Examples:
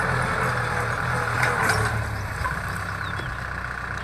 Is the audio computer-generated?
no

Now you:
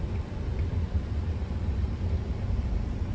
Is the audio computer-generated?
yes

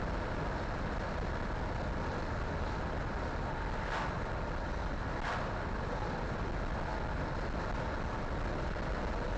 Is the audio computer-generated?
no